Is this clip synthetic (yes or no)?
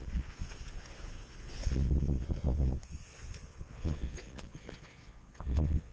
yes